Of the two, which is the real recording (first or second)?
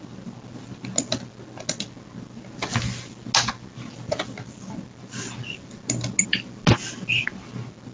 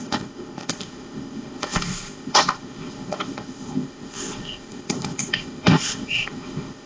first